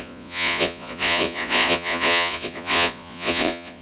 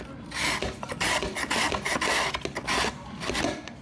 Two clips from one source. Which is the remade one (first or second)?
first